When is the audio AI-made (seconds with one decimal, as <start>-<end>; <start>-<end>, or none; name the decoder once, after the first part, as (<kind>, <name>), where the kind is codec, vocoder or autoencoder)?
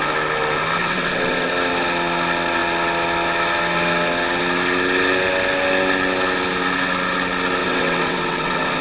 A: 0.8-1.5 (vocoder, WaveNeXt); 7.6-8.8